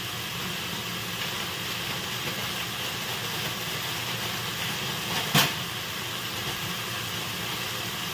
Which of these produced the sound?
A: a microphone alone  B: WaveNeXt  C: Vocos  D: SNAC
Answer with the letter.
A